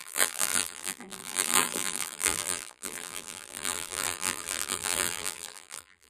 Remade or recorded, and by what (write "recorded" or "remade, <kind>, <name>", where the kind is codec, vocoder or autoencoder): remade, vocoder, BigVGAN v2